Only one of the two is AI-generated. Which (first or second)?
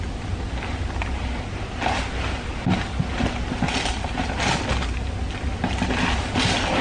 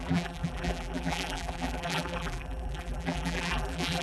second